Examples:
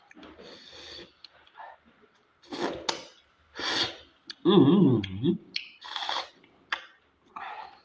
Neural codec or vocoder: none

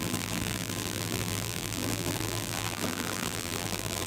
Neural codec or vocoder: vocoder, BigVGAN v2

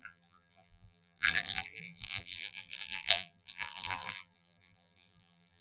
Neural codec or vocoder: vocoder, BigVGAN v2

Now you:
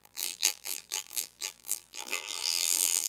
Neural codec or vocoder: vocoder, BigVGAN v2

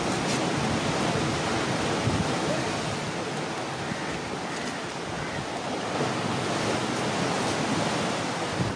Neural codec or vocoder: none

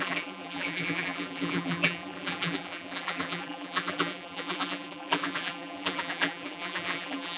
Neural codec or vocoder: vocoder, BigVGAN v2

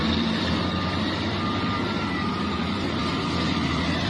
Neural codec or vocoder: vocoder, BigVGAN v2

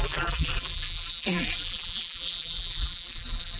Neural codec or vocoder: vocoder, BigVGAN v2